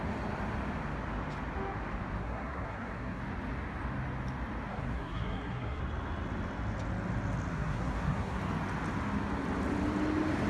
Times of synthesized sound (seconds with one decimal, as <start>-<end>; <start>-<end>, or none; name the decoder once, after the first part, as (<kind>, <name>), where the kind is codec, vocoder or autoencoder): 2.2-3.2 (codec, SNAC); 4.7-5.8; 7.5-8.4